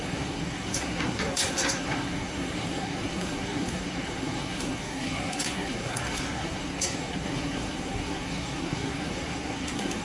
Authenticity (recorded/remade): remade